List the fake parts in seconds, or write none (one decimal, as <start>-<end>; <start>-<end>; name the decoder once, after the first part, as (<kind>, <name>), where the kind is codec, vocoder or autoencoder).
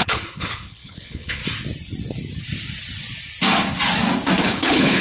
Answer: 0.0-1.4 (codec, HILCodec); 4.4-5.0